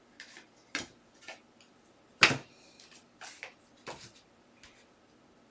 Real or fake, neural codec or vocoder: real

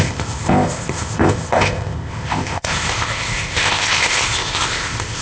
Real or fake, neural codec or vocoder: fake, codec, ZipCodec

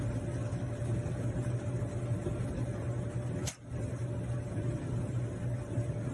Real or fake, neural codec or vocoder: real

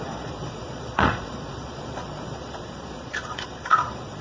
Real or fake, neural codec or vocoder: fake, vocoder, Vocos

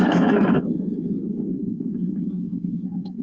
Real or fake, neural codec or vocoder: fake, codec, SNAC